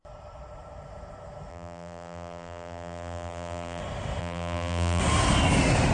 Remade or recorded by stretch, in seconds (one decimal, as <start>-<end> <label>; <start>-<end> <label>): 0.0-1.5 recorded; 1.5-3.8 remade; 3.8-4.2 recorded; 4.2-5.0 remade; 5.0-5.9 recorded